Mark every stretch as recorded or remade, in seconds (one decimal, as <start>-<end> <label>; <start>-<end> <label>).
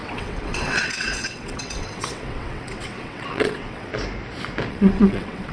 0.0-3.9 remade; 3.9-4.7 recorded; 4.7-5.5 remade